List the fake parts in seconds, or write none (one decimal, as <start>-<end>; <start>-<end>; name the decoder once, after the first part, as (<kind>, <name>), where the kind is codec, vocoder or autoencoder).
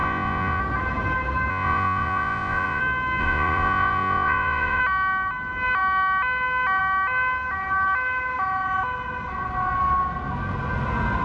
0.0-0.6 (vocoder, Vocos); 1.5-2.8; 3.2-4.8